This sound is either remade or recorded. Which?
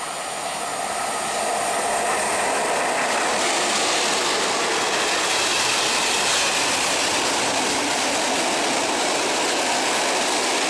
recorded